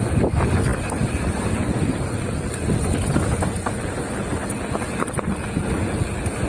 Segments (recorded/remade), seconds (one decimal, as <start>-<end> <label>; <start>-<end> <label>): 0.0-6.5 recorded